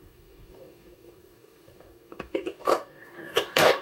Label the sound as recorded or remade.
remade